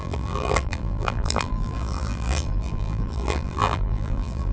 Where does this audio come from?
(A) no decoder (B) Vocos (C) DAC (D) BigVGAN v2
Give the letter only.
D